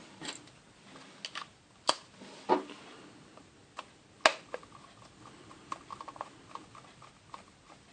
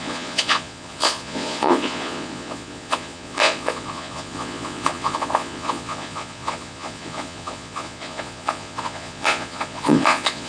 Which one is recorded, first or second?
first